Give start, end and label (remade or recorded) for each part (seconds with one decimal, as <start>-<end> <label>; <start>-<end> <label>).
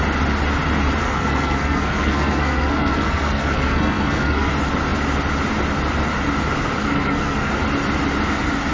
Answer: 0.0-1.0 recorded; 1.0-4.5 remade; 4.5-6.8 recorded; 6.8-7.5 remade; 7.5-8.7 recorded